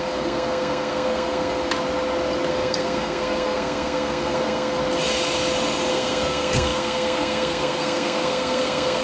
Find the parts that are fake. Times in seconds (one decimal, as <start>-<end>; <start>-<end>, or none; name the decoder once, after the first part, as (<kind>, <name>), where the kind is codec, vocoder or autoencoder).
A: 0.0-1.6 (codec, SNAC); 2.5-4.8; 5.9-9.0